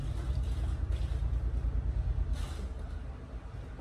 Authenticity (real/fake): real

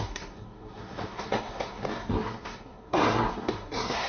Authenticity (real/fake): fake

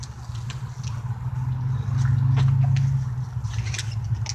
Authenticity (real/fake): real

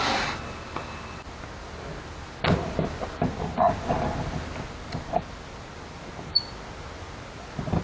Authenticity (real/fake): real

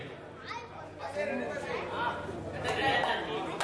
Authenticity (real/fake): real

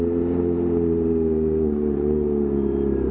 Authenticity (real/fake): real